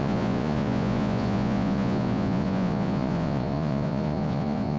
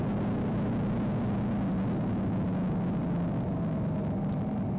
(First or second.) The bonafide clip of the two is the second